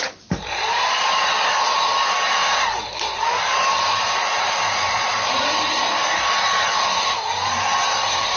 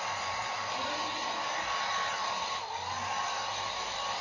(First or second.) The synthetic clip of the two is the first